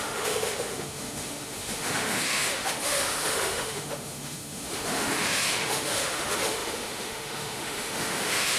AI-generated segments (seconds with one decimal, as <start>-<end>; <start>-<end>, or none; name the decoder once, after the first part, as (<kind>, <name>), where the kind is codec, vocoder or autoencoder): 0.0-8.6 (autoencoder, DAC-VAE)